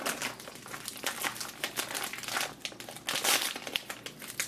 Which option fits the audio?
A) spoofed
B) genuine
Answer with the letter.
B